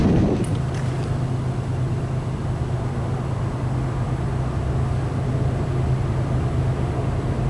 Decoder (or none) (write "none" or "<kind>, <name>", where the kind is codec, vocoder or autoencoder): none